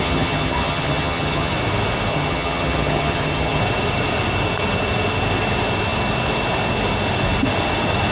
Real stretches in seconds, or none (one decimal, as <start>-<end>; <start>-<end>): 1.5-2.1; 3.6-8.1